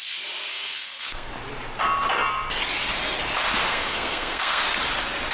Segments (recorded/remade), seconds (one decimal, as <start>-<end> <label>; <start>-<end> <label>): 0.0-0.5 recorded; 0.5-1.3 remade; 1.3-3.7 recorded; 3.7-4.6 remade; 4.6-5.3 recorded